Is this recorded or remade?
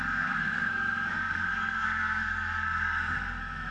remade